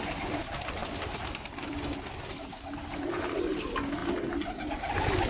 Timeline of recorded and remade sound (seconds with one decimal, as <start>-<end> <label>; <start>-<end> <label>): 0.0-5.3 recorded